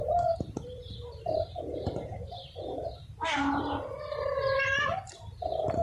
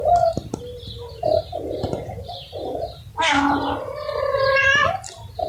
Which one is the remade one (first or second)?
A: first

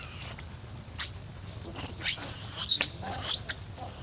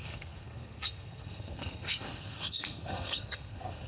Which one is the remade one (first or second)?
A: second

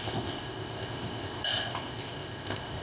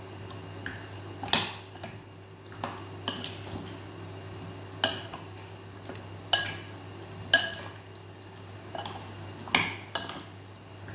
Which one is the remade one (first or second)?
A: first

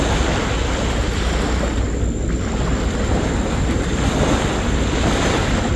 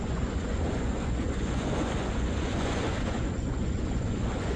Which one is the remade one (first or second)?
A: second